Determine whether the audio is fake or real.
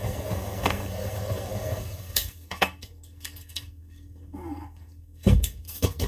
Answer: fake